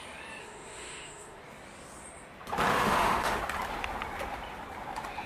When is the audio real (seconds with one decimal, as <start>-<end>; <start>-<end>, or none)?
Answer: 0.0-0.4; 1.4-2.7; 3.4-5.3